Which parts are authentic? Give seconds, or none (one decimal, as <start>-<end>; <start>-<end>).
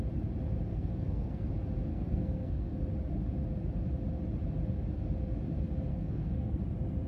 0.0-0.7; 1.5-1.9; 2.8-5.9; 6.6-7.1